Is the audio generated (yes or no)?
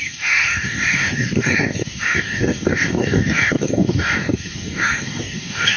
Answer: yes